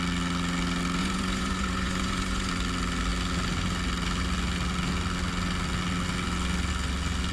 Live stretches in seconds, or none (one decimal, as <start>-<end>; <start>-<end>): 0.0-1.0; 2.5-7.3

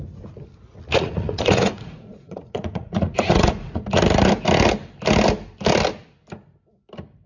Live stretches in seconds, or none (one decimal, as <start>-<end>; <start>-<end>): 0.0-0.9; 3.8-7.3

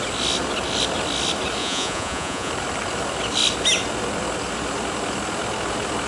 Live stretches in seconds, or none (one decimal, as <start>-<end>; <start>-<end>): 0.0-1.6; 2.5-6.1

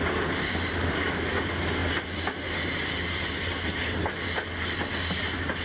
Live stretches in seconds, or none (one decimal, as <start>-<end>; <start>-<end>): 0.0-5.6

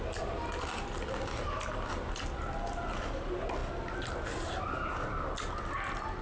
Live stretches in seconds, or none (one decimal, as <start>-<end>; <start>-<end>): 0.0-6.2

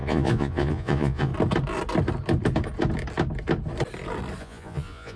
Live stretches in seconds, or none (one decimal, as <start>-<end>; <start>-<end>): 1.3-4.4